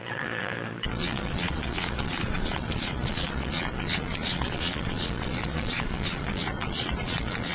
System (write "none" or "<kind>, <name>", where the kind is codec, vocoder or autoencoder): vocoder, Vocos